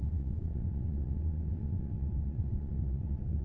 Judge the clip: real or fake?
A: fake